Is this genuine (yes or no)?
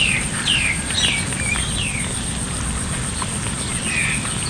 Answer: yes